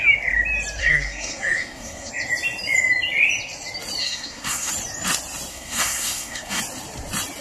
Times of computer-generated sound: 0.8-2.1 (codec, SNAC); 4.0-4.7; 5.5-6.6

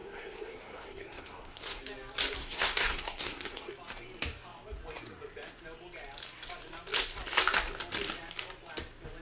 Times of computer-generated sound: 0.0-1.8 (codec, SNAC); 2.4-3.7

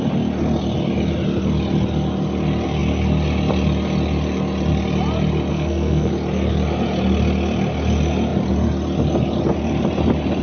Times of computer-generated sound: 5.5-6.1 (codec, SNAC)

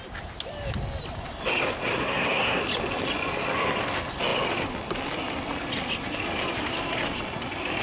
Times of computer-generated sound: 2.0-2.6 (codec, SNAC)

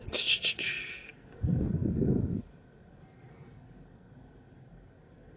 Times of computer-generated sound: 0.0-5.4 (codec, SNAC)